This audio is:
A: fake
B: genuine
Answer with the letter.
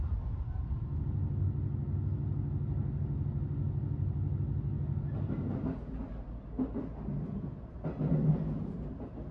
B